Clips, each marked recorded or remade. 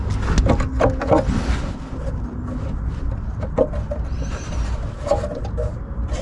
recorded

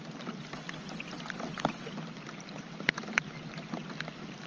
recorded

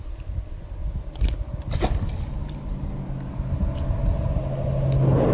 recorded